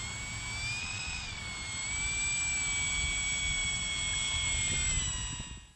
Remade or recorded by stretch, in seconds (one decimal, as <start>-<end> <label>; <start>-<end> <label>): 0.0-0.8 recorded; 0.8-1.4 remade; 1.4-5.8 recorded